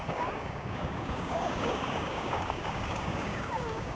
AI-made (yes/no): yes